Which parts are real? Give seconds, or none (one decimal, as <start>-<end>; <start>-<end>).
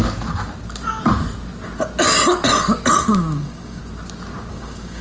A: 0.0-3.0; 3.8-4.5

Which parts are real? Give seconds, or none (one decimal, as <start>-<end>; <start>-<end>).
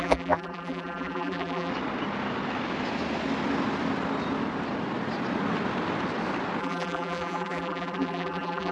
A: 1.7-6.6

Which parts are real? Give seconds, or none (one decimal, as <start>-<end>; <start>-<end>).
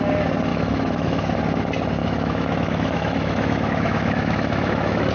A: 0.0-0.5; 1.4-2.0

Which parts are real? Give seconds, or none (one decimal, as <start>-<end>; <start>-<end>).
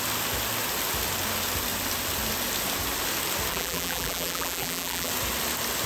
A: 0.0-3.5; 5.1-5.9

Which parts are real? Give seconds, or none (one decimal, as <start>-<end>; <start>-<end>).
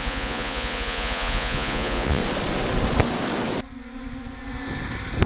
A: 2.2-5.3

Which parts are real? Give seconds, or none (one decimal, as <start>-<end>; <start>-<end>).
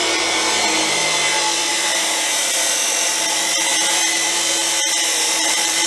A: 0.0-0.9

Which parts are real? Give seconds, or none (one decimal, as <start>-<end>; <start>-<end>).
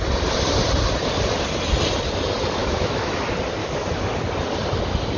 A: 0.0-2.6; 3.2-3.6; 4.1-5.2